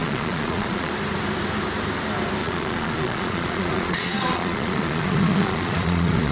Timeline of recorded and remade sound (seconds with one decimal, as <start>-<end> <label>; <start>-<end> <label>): 0.0-0.9 remade; 0.9-2.4 recorded; 2.4-6.3 remade